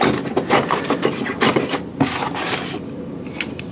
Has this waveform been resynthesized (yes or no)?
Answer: no